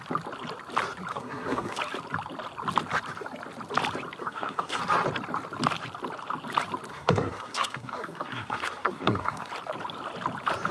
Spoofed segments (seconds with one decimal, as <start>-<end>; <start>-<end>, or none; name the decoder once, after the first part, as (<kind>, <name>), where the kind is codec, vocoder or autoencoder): 1.1-1.8 (codec, SNAC); 4.2-4.8; 6.9-9.5